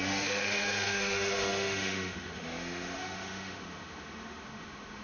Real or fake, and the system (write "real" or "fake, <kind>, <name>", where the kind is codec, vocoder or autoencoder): fake, autoencoder, DAC-VAE